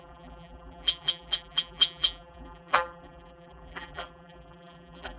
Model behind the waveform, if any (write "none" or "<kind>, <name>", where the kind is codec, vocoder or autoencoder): vocoder, BigVGAN v2